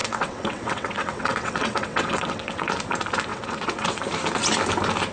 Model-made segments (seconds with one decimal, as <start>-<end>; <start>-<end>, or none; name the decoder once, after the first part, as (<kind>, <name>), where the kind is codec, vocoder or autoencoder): 0.0-2.7 (vocoder, WaveNeXt); 3.3-4.0